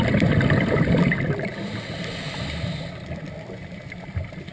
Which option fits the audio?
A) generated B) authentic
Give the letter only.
B